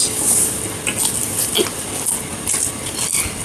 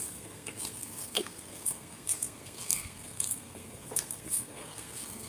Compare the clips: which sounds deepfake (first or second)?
second